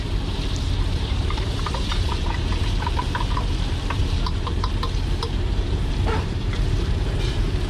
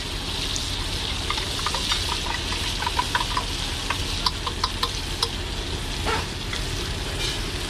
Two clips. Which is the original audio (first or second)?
second